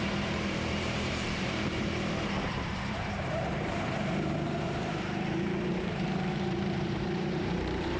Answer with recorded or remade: remade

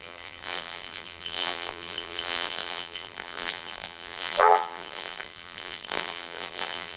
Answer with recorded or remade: remade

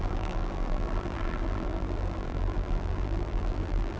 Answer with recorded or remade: remade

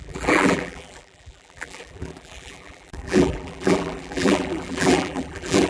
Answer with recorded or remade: remade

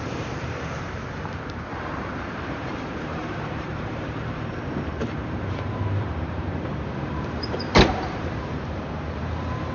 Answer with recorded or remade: remade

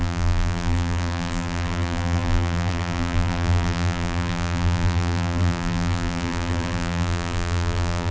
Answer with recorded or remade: remade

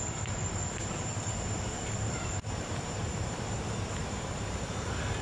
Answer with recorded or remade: remade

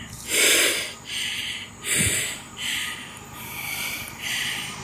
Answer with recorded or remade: remade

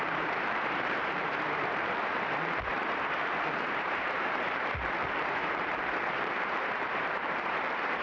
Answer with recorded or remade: remade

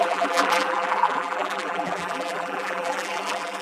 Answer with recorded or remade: remade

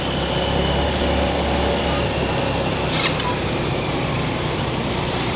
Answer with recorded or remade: remade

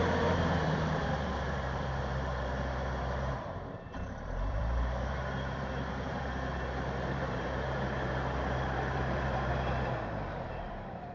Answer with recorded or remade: remade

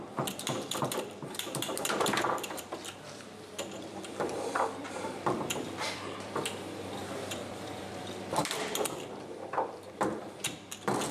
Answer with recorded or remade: remade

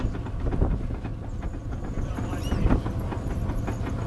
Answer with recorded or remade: recorded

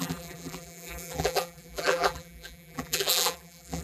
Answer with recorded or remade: remade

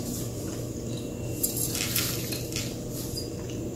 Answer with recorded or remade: recorded